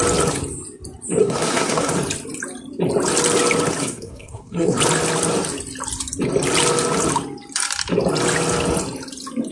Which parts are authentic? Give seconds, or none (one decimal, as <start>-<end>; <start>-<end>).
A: 0.0-1.2; 1.9-3.8; 4.8-9.5